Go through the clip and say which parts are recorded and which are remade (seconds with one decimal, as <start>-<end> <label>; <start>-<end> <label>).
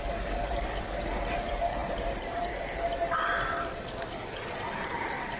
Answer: 0.0-1.8 recorded; 1.8-2.4 remade; 2.4-5.4 recorded